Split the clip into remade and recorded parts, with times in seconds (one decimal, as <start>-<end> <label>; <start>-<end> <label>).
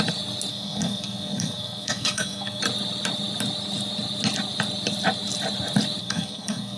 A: 0.0-0.5 recorded; 0.5-2.6 remade; 2.6-6.0 recorded; 6.0-6.8 remade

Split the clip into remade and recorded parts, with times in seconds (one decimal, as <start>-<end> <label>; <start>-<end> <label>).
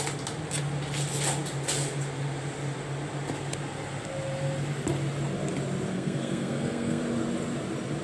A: 0.0-5.9 recorded; 5.9-7.0 remade; 7.0-8.0 recorded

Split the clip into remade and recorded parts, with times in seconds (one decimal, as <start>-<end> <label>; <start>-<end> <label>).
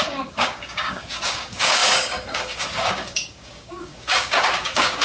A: 0.0-5.0 remade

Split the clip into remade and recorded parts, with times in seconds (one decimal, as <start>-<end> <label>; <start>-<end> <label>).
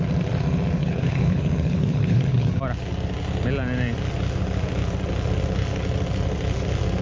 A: 0.0-0.8 recorded; 0.8-2.6 remade; 2.6-7.0 recorded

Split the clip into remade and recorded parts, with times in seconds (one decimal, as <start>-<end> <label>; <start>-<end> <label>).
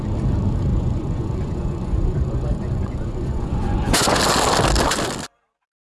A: 0.0-0.7 recorded; 0.7-4.2 remade; 4.2-5.9 recorded